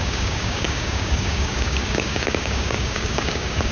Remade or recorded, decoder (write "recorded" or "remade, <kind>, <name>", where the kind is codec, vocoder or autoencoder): remade, codec, DAC